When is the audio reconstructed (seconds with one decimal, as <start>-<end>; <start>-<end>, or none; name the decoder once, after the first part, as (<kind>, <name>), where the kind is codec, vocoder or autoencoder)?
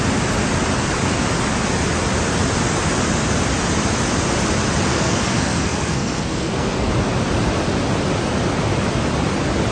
4.9-6.9 (codec, SNAC)